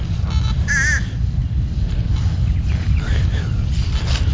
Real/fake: real